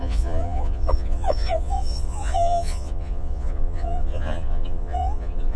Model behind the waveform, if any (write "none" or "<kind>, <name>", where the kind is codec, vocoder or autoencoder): vocoder, Vocos